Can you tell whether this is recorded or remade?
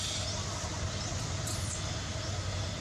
recorded